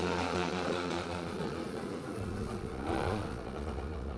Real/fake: fake